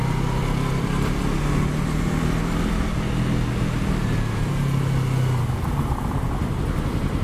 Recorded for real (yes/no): yes